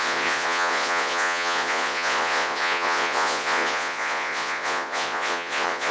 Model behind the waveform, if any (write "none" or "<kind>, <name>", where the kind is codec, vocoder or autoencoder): vocoder, Vocos